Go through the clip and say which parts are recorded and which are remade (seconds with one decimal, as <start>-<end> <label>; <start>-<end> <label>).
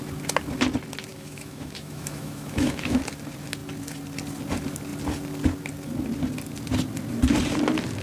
0.0-1.1 recorded; 1.1-3.0 remade; 3.0-8.0 recorded